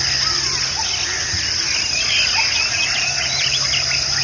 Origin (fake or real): real